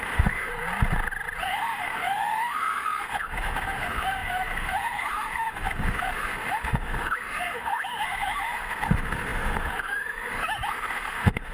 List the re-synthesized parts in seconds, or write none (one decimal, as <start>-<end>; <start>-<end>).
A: 0.0-0.5; 1.4-11.5